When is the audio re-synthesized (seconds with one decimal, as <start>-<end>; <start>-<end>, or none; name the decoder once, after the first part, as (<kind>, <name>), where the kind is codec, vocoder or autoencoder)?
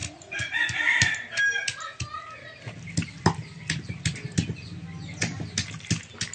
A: 0.0-1.4 (vocoder, BigVGAN v2)